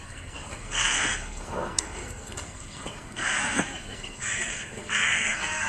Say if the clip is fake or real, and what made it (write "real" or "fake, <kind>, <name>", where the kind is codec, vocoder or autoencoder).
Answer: fake, codec, SNAC